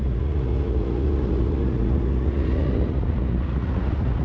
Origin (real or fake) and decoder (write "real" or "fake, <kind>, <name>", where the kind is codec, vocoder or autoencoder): fake, vocoder, Vocos